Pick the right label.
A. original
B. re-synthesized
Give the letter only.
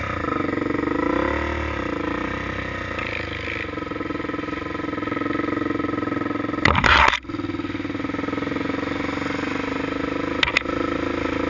A